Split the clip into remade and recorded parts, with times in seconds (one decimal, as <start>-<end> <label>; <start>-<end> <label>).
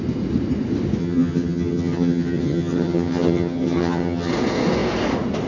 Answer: 0.0-1.0 recorded; 1.0-4.3 remade; 4.3-5.5 recorded